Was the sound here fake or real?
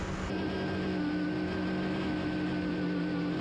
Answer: real